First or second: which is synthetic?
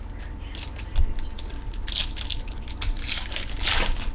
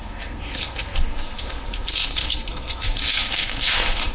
second